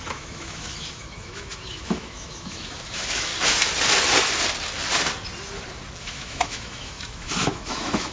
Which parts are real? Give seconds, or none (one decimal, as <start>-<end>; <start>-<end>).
3.3-6.0